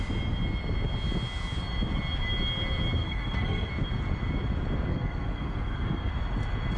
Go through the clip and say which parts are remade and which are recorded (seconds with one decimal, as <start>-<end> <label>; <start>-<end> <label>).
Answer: 0.0-3.0 recorded; 3.0-3.7 remade; 3.7-4.9 recorded; 4.9-6.1 remade; 6.1-6.8 recorded